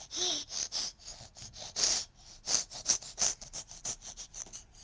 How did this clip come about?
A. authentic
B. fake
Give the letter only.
A